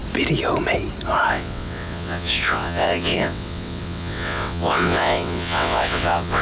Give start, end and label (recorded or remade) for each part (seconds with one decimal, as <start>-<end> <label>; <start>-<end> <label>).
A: 0.0-1.3 recorded; 1.3-6.4 remade